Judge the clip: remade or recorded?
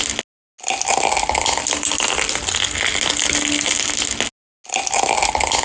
recorded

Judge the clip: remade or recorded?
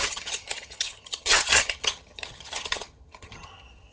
remade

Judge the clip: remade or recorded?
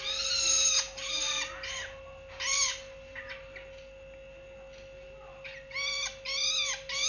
recorded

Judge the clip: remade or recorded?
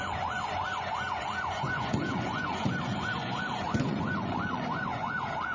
remade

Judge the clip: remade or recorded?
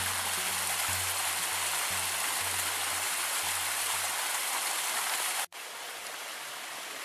recorded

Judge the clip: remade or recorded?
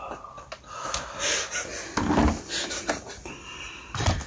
recorded